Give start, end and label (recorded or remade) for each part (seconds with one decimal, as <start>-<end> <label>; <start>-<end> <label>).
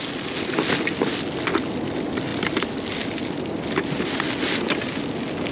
0.0-5.5 recorded